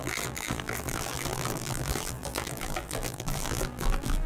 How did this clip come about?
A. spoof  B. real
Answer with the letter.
A